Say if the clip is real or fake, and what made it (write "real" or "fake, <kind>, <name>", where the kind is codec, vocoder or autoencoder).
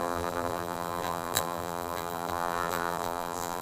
fake, vocoder, BigVGAN v2